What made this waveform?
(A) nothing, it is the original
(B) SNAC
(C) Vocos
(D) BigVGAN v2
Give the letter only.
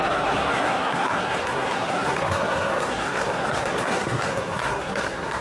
B